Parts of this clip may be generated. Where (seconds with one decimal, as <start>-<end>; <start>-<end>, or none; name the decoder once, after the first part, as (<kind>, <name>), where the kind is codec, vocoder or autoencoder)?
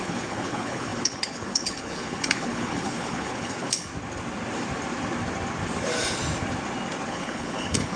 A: 0.0-3.9 (codec, HILCodec); 7.1-8.0